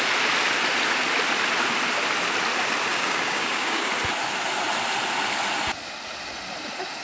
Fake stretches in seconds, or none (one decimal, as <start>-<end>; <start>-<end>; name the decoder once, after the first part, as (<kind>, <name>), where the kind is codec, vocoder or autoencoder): 2.9-3.9 (codec, DAC)